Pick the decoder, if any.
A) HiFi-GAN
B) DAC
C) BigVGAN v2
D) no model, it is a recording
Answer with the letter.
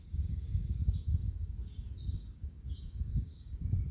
B